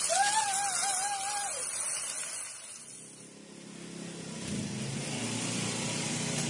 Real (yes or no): yes